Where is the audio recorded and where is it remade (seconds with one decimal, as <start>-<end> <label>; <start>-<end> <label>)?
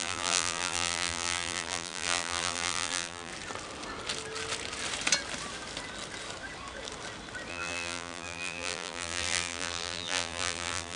0.0-3.3 remade; 3.3-7.5 recorded; 7.5-11.0 remade